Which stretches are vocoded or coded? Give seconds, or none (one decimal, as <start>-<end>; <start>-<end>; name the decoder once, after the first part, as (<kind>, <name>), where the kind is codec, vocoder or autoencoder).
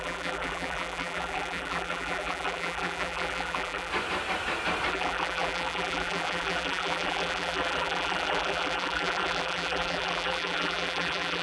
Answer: 0.0-3.9 (vocoder, BigVGAN v2); 4.9-11.4